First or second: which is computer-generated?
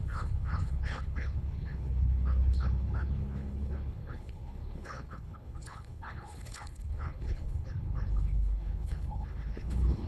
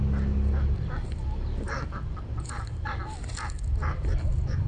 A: first